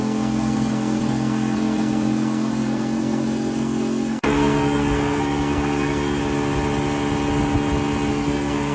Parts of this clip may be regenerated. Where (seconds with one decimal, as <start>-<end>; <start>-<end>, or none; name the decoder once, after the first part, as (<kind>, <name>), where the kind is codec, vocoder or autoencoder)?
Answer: 0.0-6.2 (codec, SNAC); 8.1-8.7